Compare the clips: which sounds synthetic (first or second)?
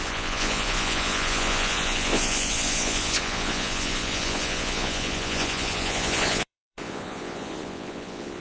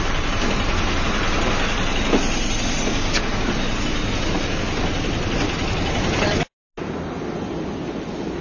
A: first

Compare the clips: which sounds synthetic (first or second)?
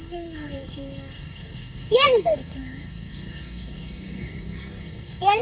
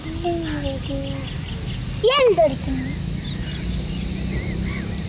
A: first